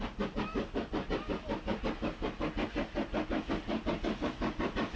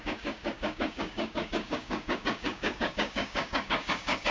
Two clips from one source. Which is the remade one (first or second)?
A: second